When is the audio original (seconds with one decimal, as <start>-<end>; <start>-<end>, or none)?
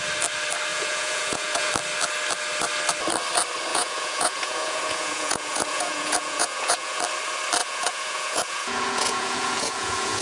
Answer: 0.0-0.7; 1.7-3.7; 7.0-7.6